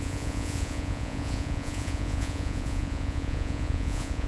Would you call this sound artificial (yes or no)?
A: yes